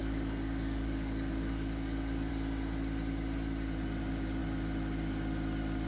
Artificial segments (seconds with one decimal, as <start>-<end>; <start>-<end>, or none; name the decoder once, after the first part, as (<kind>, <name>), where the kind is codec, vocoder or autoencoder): 0.0-2.3 (codec, DAC)